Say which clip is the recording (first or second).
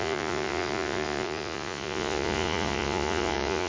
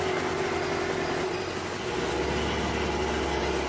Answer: second